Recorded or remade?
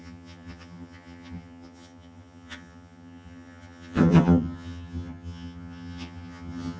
remade